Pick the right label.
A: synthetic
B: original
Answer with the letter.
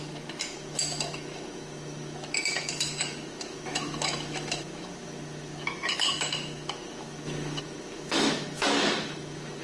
A